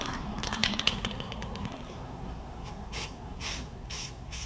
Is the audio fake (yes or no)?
yes